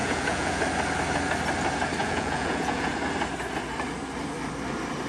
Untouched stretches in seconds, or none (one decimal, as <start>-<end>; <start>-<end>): 0.6-2.0; 2.9-5.1